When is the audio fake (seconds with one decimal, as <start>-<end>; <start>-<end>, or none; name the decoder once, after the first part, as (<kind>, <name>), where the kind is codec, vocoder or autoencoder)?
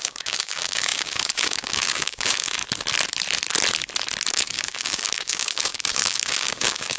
0.0-2.6 (codec, DAC); 4.3-7.0